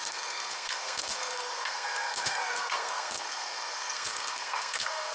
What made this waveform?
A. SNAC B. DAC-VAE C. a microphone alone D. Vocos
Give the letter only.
A